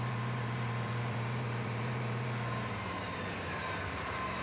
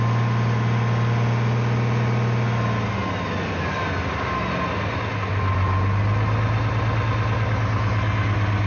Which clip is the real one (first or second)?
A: second